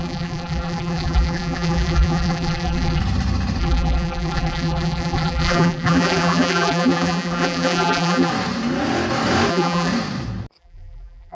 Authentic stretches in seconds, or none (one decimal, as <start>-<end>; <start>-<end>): 3.0-3.6; 8.3-9.5; 9.9-10.6